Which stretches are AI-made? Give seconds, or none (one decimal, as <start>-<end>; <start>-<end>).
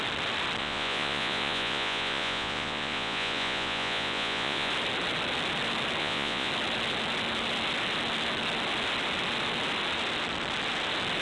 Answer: 0.6-4.7; 6.0-6.5